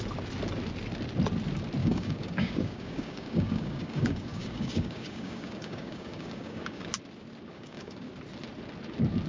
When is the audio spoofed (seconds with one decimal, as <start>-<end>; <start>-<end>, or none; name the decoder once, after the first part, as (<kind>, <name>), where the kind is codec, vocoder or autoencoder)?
1.8-6.9 (codec, DAC); 7.5-8.1